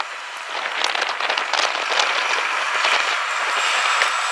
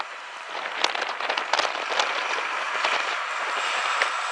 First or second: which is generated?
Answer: second